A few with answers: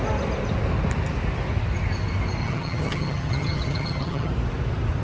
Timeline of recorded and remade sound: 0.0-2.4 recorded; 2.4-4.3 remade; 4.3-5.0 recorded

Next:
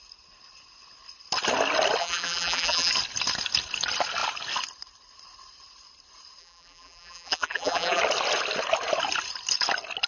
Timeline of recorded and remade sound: 0.0-2.0 recorded; 2.0-2.9 remade; 2.9-6.4 recorded; 6.4-8.0 remade; 8.0-10.1 recorded

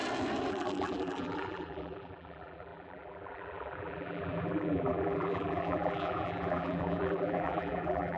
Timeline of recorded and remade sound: 0.0-0.5 recorded; 0.5-8.2 remade

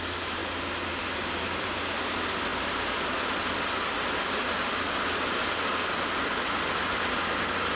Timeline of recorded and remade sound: 0.0-0.4 remade; 0.4-0.9 recorded; 0.9-2.5 remade; 2.5-6.7 recorded; 6.7-7.8 remade

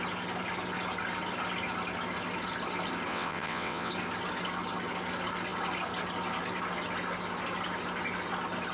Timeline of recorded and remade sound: 0.0-3.1 recorded; 3.1-3.9 remade; 3.9-8.7 recorded

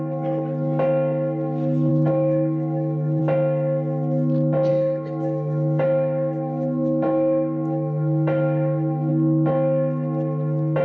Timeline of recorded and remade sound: 0.0-1.9 recorded; 1.9-3.2 remade; 3.2-4.7 recorded; 4.7-9.1 remade; 9.1-10.8 recorded

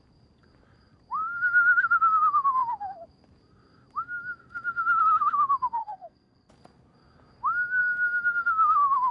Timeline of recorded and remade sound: 0.0-5.8 recorded; 5.8-6.5 remade; 6.5-9.1 recorded